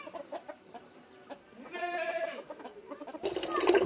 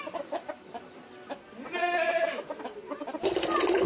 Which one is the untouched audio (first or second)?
second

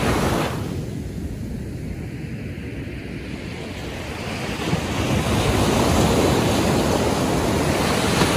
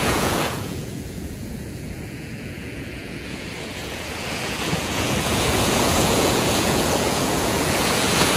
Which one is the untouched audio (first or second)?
first